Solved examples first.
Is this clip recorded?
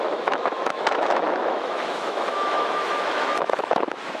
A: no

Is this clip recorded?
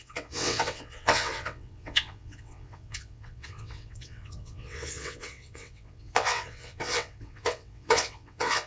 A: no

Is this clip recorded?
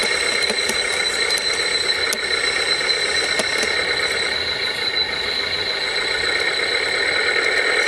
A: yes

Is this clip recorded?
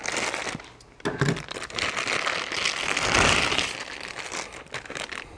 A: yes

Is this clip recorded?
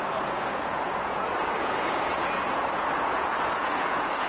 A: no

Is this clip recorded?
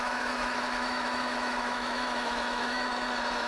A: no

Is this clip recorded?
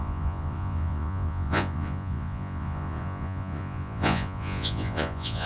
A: no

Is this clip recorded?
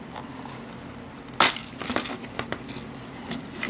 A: yes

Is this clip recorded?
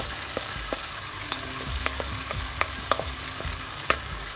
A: no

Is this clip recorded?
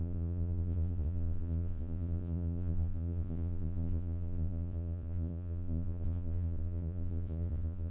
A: no